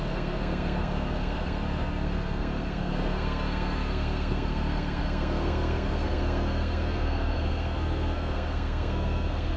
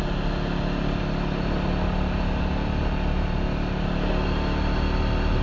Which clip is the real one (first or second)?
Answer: second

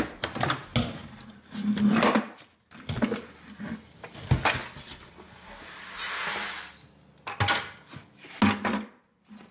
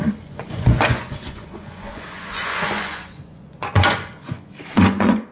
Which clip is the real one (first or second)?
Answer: first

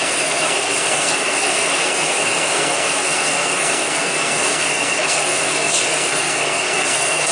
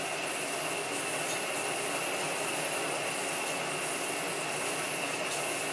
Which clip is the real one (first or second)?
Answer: second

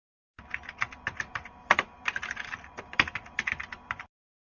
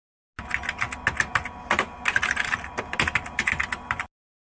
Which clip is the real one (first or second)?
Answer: second